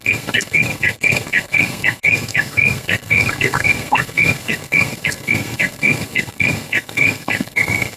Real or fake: fake